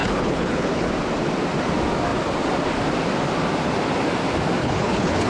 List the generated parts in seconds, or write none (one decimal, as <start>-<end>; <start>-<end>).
0.0-0.9; 4.6-5.3